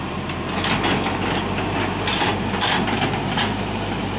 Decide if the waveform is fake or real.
real